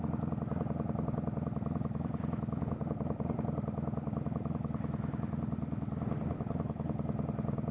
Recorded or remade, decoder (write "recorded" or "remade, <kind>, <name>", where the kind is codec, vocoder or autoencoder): recorded